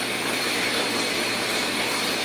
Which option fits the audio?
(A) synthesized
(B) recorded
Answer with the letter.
A